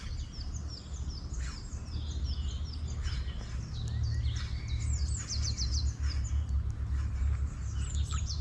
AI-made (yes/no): no